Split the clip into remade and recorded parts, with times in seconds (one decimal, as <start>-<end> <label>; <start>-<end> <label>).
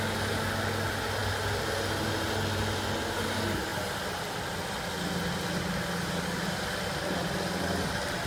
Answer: 0.0-8.3 recorded